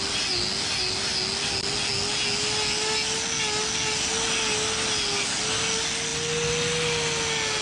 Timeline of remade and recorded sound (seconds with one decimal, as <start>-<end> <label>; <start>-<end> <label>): 0.0-7.6 recorded